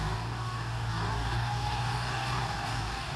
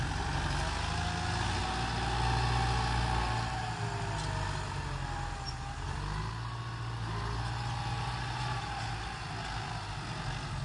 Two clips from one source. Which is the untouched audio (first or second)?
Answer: second